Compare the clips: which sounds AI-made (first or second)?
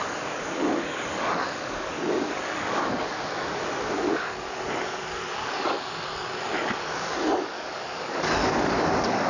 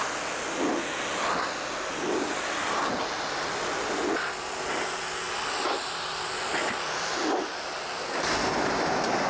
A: first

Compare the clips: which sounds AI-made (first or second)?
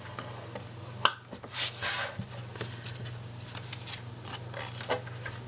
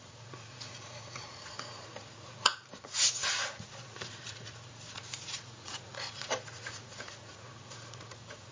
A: second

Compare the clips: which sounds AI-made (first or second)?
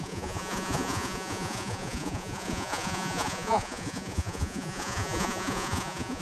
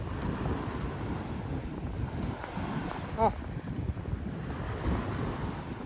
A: first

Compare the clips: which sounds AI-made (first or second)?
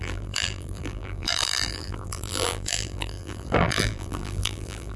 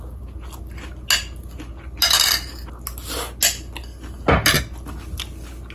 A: first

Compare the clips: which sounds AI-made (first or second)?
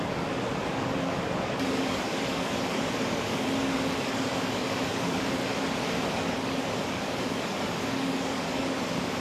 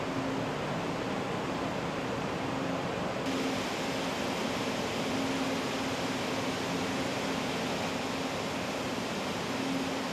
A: first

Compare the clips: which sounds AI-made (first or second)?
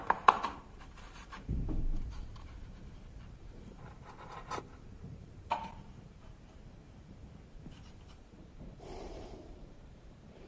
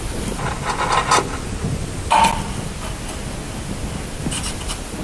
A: first